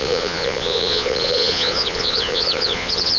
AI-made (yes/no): yes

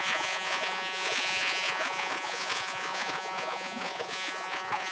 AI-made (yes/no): yes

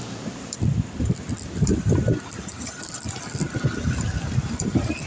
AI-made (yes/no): no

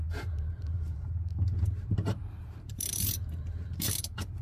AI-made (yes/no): yes